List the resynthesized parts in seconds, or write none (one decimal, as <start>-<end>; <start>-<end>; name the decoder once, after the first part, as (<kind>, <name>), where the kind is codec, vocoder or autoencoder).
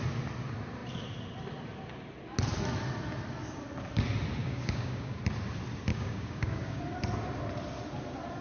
4.4-5.2 (codec, DAC); 5.9-6.8